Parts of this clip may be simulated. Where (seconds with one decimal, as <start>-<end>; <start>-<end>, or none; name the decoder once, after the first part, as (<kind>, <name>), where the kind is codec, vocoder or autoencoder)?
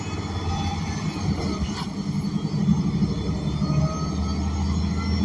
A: none